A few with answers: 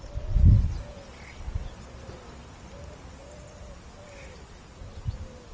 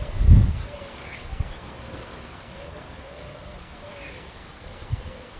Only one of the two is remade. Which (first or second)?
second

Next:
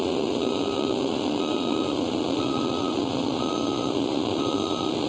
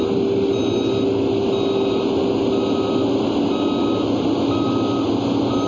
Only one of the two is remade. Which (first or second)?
first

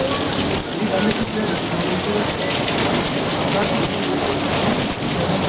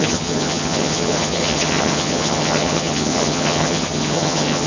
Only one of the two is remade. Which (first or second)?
second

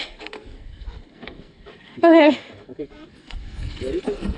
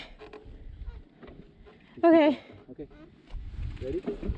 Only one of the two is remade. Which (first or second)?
first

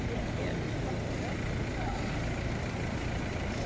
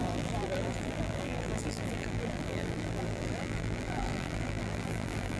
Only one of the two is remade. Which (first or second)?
second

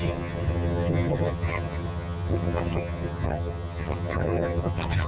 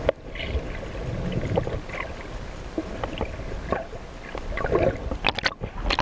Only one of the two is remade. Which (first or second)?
first